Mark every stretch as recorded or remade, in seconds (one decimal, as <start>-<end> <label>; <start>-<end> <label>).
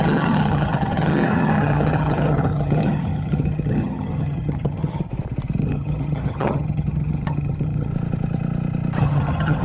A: 0.0-5.1 remade; 5.1-5.6 recorded; 5.6-7.9 remade; 7.9-9.0 recorded; 9.0-9.6 remade